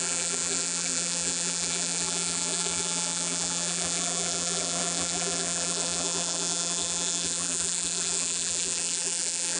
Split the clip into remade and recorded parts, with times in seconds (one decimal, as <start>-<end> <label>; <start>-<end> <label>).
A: 0.0-9.6 remade